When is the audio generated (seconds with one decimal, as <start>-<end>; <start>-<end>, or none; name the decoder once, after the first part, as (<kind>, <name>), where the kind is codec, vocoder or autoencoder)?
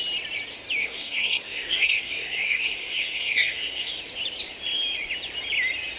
0.8-3.9 (codec, SNAC)